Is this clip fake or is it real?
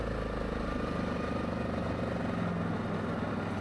real